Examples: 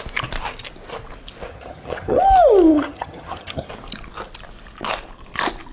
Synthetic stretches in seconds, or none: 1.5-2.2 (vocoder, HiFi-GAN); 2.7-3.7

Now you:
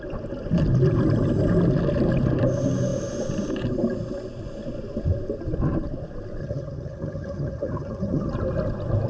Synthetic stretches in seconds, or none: 6.4-8.3 (vocoder, HiFi-GAN)